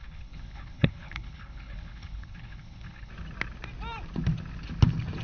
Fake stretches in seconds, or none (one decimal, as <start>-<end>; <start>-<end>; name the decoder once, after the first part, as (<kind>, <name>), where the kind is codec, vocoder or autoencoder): 0.0-3.1 (codec, HILCodec)